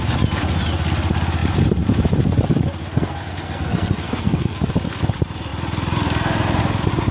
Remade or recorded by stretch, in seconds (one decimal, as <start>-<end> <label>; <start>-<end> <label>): 0.0-2.8 recorded; 2.8-4.7 remade; 4.7-7.1 recorded